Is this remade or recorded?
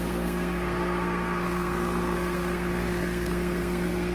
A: remade